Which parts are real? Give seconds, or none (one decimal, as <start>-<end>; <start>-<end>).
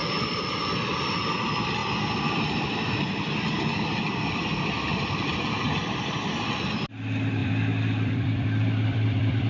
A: 0.5-4.9; 5.6-7.4